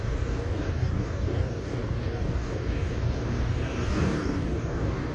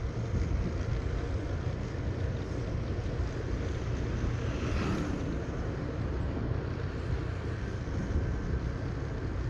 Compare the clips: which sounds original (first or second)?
second